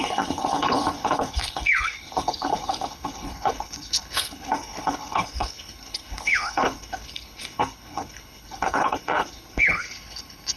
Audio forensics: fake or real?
fake